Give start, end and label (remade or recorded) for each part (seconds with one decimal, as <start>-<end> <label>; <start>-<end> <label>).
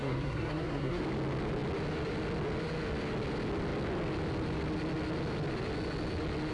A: 0.0-1.0 remade; 1.0-6.5 recorded